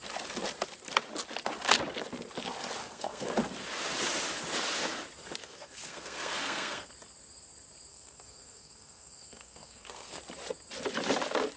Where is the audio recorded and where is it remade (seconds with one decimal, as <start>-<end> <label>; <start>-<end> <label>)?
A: 0.0-2.8 recorded; 2.8-3.3 remade; 3.3-5.4 recorded; 5.4-6.9 remade; 6.9-7.9 recorded; 7.9-10.2 remade; 10.2-11.6 recorded